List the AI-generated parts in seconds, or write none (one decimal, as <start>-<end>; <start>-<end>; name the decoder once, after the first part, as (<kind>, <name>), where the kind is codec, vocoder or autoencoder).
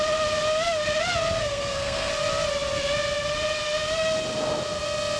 1.4-2.1 (codec, SNAC)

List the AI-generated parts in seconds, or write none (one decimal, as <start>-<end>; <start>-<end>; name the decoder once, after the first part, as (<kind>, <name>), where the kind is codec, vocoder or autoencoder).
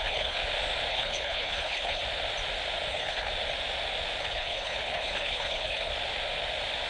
0.0-0.4 (codec, HILCodec); 0.9-2.0; 2.9-3.3; 4.2-5.9